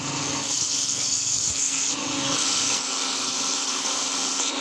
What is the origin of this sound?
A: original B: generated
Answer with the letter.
B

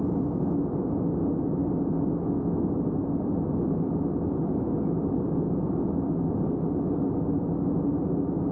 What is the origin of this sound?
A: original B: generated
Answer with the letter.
A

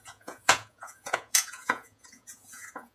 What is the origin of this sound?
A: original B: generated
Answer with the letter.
B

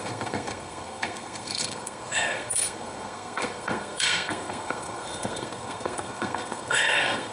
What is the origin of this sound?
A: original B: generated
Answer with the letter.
B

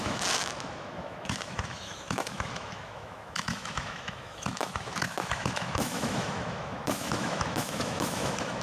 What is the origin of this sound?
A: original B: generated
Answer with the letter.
B